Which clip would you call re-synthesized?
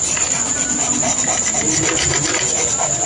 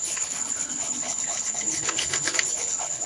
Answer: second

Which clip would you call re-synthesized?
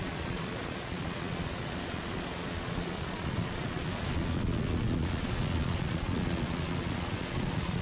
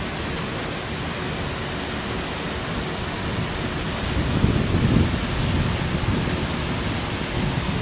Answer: first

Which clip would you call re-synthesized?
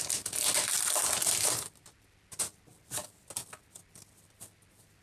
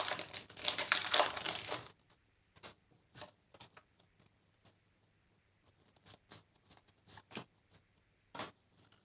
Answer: second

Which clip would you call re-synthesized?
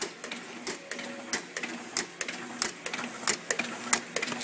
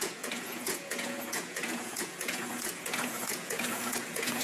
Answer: second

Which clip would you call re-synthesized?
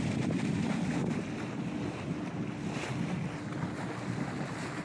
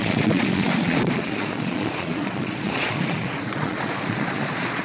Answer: second